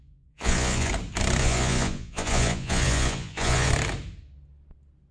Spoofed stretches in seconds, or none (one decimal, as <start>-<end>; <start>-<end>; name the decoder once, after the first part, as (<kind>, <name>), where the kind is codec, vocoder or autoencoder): 0.0-0.9 (vocoder, Vocos); 1.4-3.7